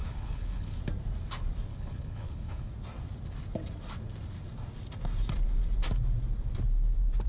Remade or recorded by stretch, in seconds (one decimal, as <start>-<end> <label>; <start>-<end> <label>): 0.0-0.8 remade; 0.8-1.7 recorded; 1.7-2.7 remade; 2.7-7.3 recorded

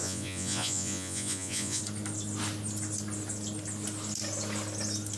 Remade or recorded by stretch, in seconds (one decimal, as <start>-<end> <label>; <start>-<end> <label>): 0.0-1.8 remade; 1.8-5.2 recorded

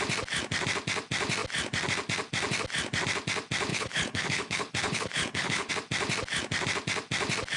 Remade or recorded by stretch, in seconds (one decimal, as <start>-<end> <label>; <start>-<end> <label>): 0.0-3.7 recorded; 3.7-5.7 remade; 5.7-7.6 recorded

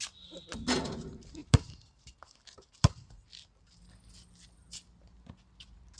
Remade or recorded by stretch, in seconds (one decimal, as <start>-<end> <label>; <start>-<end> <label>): 0.0-1.4 recorded; 1.4-2.9 remade; 2.9-6.0 recorded

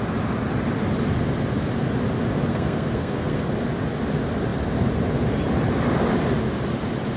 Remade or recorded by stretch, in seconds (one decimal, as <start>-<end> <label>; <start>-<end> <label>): 0.0-2.5 recorded; 2.5-3.4 remade; 3.4-7.2 recorded

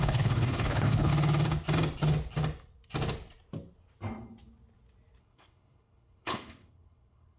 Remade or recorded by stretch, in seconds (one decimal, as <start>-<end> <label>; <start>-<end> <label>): 0.0-1.1 remade; 1.1-5.2 recorded; 5.2-7.4 remade

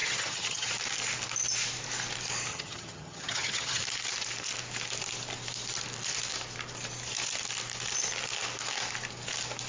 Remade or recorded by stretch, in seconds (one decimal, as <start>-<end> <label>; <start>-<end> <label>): 0.0-0.7 remade; 0.7-2.5 recorded; 2.5-3.8 remade; 3.8-9.7 recorded

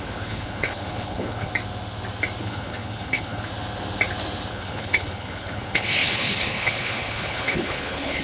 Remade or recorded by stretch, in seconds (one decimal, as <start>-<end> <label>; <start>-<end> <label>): 0.0-1.5 remade; 1.5-2.4 recorded; 2.4-3.5 remade; 3.5-4.5 recorded; 4.5-8.2 remade